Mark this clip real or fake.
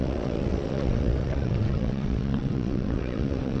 fake